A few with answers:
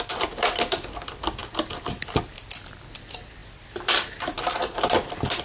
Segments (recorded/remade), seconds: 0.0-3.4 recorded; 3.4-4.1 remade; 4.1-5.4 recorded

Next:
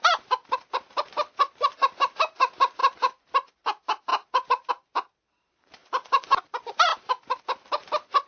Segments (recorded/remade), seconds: 0.0-2.8 remade; 2.8-3.5 recorded; 3.5-8.3 remade

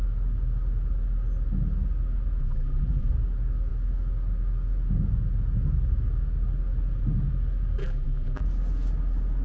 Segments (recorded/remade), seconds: 0.0-2.4 recorded; 2.4-3.1 remade; 3.1-7.8 recorded; 7.8-8.4 remade; 8.4-9.4 recorded

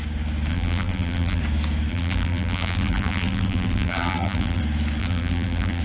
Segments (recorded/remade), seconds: 0.0-0.5 recorded; 0.5-1.4 remade; 1.4-1.9 recorded; 1.9-4.6 remade; 4.6-5.0 recorded; 5.0-5.8 remade

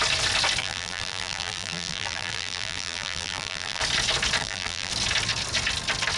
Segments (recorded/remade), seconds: 0.0-0.6 recorded; 0.6-3.8 remade; 3.8-4.4 recorded; 4.4-4.9 remade; 4.9-6.2 recorded

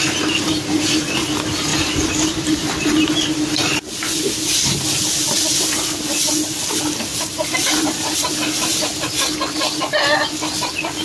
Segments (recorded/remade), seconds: 0.0-1.7 recorded; 1.7-3.1 remade; 3.1-7.1 recorded; 7.1-8.3 remade; 8.3-11.0 recorded

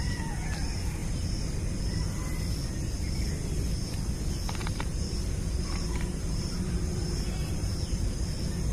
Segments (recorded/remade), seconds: 0.0-1.0 recorded; 1.0-1.8 remade; 1.8-4.6 recorded; 4.6-8.1 remade; 8.1-8.7 recorded

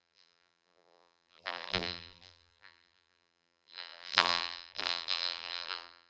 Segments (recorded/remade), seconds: 0.0-6.1 remade